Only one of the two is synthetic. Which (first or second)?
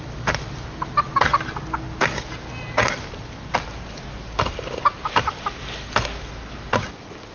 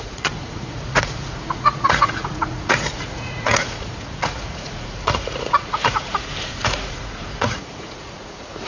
second